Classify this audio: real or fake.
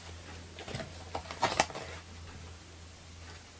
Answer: real